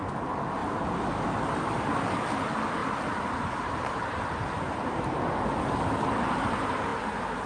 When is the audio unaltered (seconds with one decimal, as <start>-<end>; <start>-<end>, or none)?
0.0-0.6; 1.9-2.8; 5.2-7.5